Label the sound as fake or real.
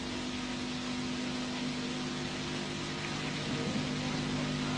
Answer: real